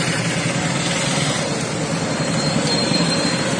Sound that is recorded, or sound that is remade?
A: recorded